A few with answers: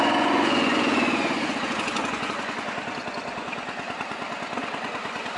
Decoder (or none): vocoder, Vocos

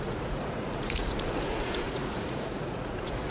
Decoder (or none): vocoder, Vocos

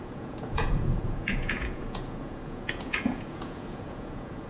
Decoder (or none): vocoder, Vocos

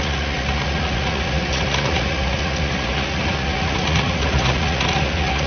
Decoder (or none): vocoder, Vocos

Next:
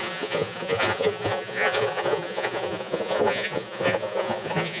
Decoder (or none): vocoder, Vocos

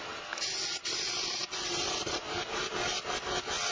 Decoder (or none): none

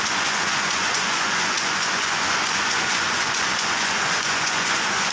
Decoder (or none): vocoder, Vocos